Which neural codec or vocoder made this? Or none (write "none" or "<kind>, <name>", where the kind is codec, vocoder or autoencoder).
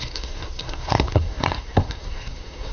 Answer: codec, SNAC